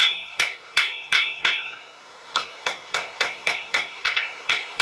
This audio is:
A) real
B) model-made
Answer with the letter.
B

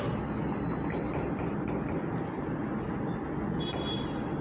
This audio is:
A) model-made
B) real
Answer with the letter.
B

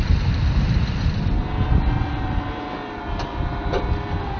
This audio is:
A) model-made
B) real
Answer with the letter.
B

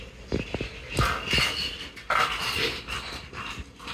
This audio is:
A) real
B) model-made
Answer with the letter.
A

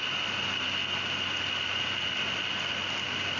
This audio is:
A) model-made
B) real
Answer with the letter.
B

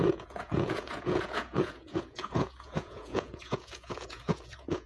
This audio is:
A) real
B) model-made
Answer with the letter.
B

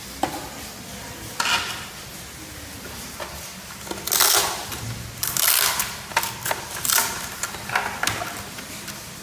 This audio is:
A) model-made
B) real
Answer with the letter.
B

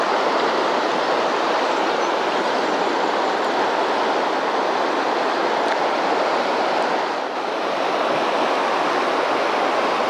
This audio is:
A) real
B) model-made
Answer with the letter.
A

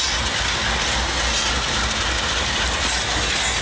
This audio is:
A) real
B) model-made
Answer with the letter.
A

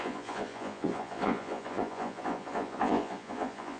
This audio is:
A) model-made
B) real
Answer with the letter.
A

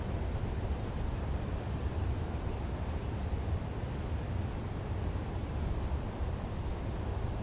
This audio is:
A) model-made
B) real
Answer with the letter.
B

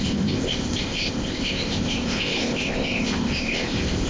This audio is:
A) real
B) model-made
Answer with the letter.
B